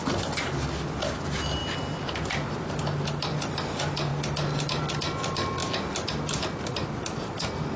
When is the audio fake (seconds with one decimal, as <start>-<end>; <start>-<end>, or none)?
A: none